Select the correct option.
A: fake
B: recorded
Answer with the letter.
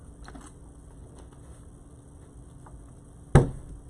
B